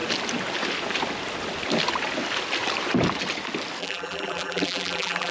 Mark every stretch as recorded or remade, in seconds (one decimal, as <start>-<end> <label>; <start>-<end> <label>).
0.0-3.8 recorded; 3.8-5.3 remade